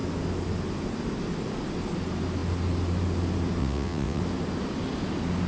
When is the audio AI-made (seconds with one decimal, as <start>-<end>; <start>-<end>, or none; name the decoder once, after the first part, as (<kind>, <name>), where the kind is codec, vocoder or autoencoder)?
3.6-4.2 (vocoder, WaveNeXt)

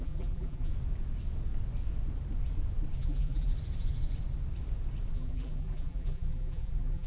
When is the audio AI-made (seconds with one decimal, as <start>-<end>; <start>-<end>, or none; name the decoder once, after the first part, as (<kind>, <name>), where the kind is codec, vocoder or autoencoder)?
0.0-0.7 (vocoder, BigVGAN v2); 3.0-3.5; 5.1-7.1